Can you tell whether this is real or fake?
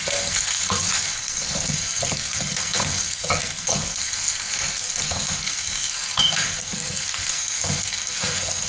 fake